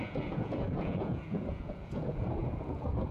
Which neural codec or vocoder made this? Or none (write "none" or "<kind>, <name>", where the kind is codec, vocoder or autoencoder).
vocoder, Vocos